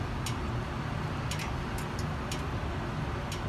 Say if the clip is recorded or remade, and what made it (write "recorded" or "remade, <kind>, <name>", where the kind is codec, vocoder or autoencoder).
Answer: recorded